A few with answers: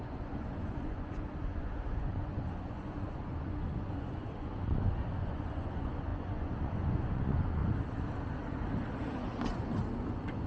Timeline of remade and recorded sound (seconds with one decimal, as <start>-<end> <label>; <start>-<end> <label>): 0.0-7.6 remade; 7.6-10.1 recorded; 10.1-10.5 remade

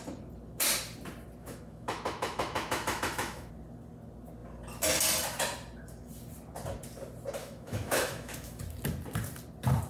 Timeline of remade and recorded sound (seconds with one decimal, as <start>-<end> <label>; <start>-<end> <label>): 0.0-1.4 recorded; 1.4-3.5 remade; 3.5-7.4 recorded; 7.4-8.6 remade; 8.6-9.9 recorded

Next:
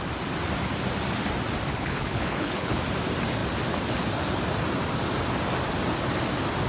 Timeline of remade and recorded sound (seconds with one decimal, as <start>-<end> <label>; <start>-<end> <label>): 0.0-1.7 recorded; 1.7-2.8 remade; 2.8-6.7 recorded

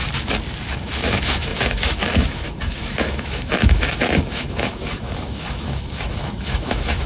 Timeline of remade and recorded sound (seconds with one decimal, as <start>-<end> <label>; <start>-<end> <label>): 0.0-0.8 recorded; 0.8-7.1 remade